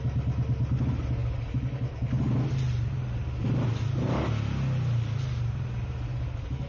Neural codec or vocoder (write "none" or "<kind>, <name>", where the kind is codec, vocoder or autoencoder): none